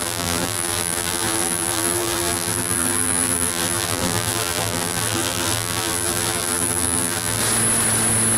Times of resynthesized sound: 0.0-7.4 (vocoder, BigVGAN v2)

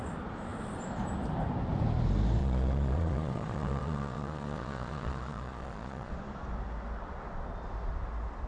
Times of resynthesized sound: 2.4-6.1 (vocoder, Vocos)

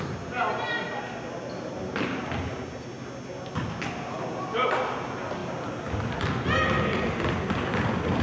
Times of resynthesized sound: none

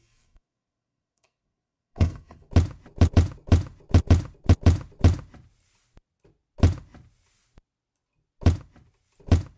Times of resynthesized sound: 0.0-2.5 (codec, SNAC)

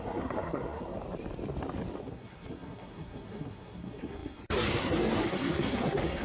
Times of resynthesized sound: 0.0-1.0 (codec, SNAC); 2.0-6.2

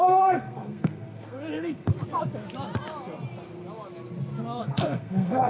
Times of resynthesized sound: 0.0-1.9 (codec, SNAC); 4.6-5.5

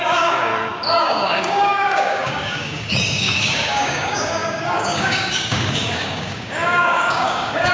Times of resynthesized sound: 0.0-0.5 (codec, DAC); 1.0-7.7